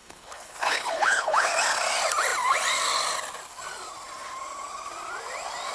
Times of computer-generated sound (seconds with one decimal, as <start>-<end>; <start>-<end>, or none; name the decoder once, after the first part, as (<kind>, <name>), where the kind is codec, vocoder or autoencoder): 0.0-1.5 (codec, HILCodec)